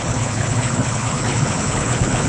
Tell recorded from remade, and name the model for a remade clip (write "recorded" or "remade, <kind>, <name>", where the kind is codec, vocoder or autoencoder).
remade, codec, HILCodec